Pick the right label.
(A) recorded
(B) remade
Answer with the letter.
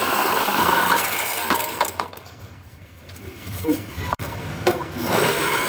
B